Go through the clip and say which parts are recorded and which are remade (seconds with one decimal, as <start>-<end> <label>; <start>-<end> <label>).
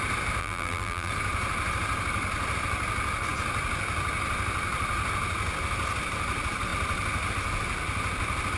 0.0-0.4 recorded; 0.4-1.1 remade; 1.1-8.6 recorded